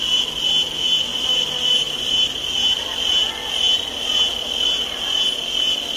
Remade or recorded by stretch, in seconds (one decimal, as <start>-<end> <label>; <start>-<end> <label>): 0.0-1.1 recorded; 1.1-2.4 remade; 2.4-6.0 recorded